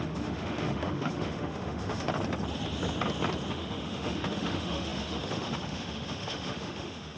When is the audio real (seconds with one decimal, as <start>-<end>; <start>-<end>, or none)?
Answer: 2.1-3.5